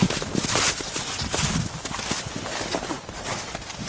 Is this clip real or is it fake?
real